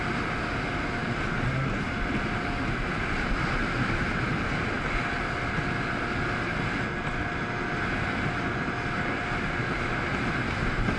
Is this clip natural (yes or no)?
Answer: yes